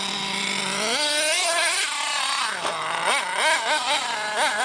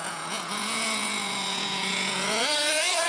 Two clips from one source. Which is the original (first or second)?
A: first